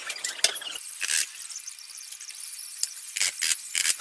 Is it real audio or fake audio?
real